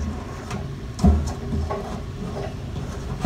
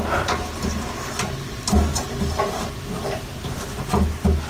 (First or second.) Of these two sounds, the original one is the second